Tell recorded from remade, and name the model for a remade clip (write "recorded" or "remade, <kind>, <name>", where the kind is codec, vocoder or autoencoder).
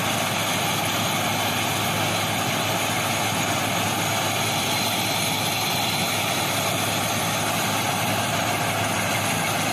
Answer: recorded